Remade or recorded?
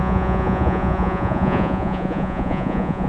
remade